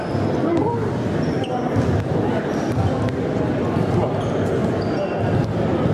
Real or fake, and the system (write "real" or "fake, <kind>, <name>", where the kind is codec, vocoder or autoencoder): real